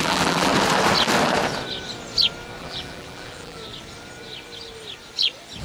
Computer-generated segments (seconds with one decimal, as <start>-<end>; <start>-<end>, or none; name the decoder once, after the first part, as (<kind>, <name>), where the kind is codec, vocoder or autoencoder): 0.0-0.5 (vocoder, BigVGAN v2); 2.6-3.6